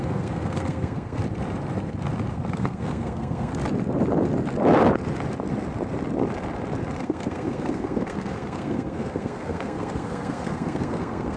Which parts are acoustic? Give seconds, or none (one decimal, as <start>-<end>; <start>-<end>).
1.2-2.3; 3.5-7.0